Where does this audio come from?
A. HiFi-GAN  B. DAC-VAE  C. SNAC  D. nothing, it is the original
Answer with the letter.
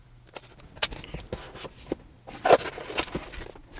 D